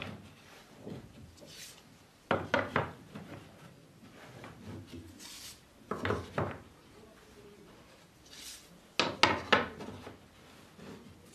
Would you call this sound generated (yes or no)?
no